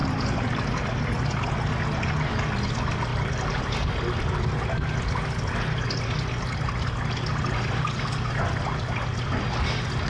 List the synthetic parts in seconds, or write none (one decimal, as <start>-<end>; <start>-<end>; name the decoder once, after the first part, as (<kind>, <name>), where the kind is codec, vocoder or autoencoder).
0.0-0.6 (vocoder, BigVGAN v2); 3.1-3.6